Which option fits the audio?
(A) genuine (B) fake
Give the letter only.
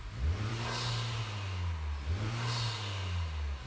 A